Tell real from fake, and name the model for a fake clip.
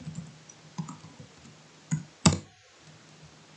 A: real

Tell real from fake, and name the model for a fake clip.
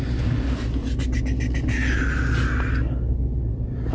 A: real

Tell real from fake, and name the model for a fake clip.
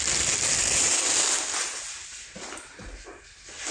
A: real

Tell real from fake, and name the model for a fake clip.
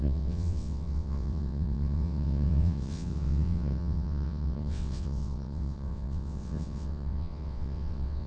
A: fake, vocoder, WaveNeXt